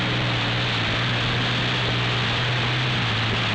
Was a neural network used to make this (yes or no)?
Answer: no